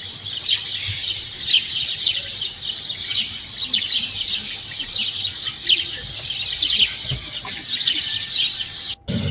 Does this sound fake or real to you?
real